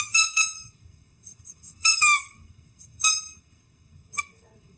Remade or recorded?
remade